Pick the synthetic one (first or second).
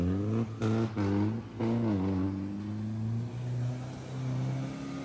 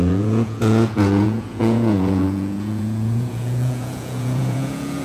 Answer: second